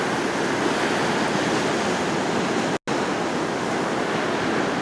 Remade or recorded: recorded